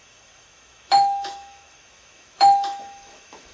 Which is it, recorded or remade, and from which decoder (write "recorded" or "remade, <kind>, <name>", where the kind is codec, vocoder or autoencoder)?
remade, autoencoder, DAC-VAE